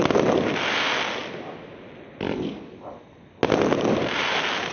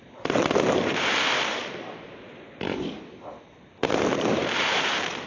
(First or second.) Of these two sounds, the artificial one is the second